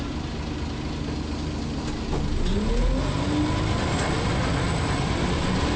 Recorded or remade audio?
recorded